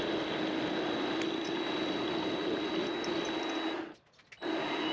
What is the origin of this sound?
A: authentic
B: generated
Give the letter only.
A